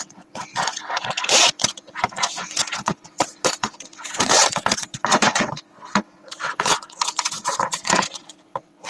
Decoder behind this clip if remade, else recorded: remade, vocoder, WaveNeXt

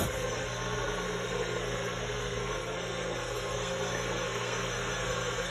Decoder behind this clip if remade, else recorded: remade, codec, SNAC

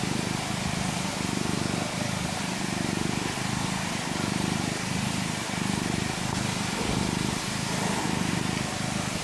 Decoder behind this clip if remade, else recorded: recorded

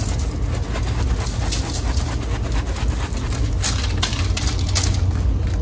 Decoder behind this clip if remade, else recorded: recorded